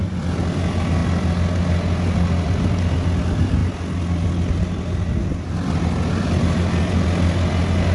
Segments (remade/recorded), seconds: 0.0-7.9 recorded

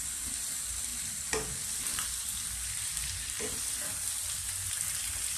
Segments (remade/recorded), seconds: 0.0-5.4 remade

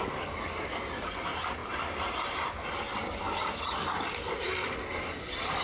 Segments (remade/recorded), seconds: 0.0-5.6 recorded

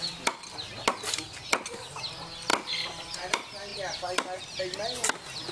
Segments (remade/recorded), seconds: 0.0-5.5 recorded

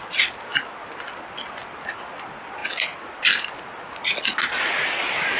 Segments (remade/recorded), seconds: 0.0-5.4 recorded

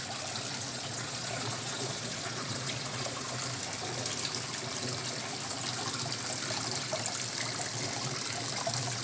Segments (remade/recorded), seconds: 0.0-0.7 recorded; 0.7-3.3 remade; 3.3-9.0 recorded

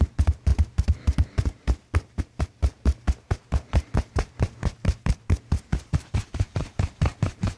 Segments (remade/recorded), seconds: 0.0-7.6 remade